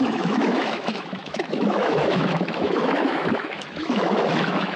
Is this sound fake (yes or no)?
yes